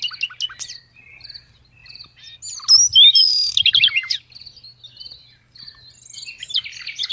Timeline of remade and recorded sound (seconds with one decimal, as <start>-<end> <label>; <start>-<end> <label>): 0.0-7.1 recorded